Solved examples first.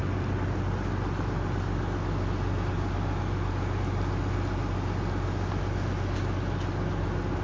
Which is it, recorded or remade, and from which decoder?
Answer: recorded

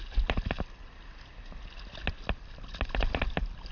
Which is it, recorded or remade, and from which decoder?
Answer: recorded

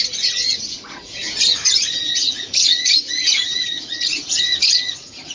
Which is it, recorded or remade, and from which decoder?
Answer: remade, vocoder, Vocos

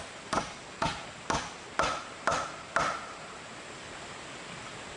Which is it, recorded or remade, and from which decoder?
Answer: recorded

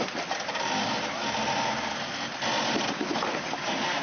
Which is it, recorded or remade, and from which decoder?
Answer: recorded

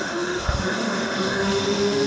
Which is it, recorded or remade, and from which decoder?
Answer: remade, autoencoder, DAC-VAE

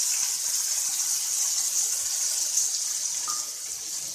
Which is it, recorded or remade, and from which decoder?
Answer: recorded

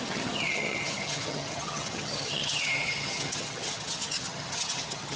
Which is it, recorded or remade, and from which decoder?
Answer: remade, vocoder, HiFi-GAN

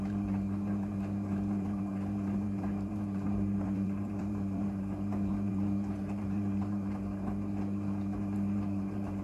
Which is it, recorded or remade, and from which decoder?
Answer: remade, vocoder, BigVGAN v2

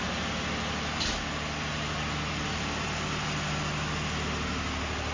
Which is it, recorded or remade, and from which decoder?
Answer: recorded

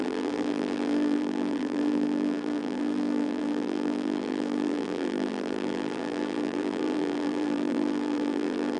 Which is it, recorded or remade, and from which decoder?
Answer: remade, vocoder, BigVGAN v2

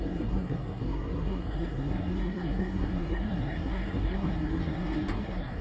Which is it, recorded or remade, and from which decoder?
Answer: remade, codec, SNAC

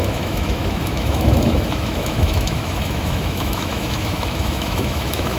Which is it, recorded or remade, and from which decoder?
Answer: remade, autoencoder, DAC-VAE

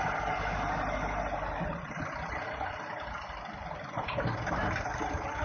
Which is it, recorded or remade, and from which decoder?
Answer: recorded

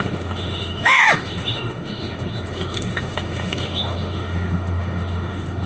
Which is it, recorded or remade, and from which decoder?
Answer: remade, autoencoder, DAC-VAE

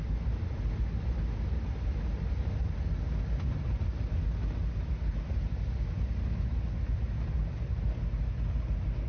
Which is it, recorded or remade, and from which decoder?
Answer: recorded